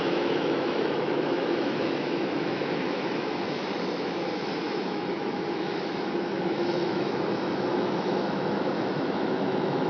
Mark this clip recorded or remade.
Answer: remade